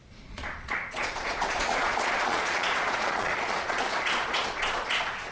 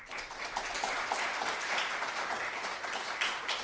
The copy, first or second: first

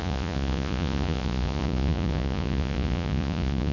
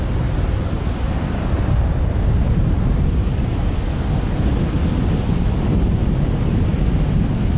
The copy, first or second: first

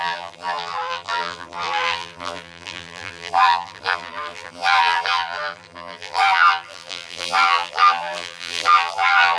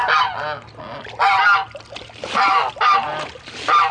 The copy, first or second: first